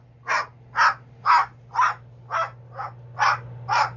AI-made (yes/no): no